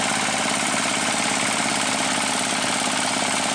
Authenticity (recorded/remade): recorded